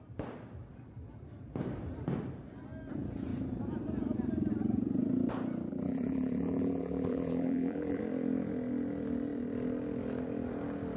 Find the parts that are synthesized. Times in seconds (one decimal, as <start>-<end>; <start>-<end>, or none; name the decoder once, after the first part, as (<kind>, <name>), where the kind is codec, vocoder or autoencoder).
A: 5.7-8.0 (vocoder, BigVGAN v2)